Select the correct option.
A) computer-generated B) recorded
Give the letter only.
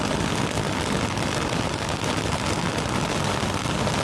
B